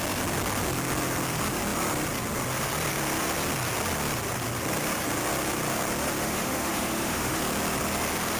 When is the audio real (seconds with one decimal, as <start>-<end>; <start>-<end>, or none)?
0.0-6.2; 7.4-8.4